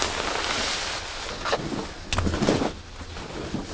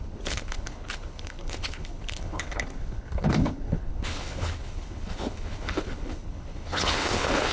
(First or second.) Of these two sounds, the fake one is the second